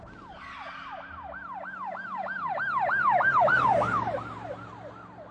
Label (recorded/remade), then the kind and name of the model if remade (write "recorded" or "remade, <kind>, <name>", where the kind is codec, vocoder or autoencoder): recorded